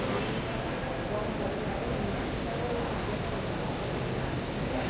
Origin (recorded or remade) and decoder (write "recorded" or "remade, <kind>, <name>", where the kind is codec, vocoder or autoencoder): recorded